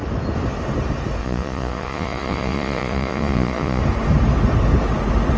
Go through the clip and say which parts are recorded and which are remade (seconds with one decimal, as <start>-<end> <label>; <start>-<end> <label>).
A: 0.0-1.2 recorded; 1.2-3.8 remade; 3.8-5.4 recorded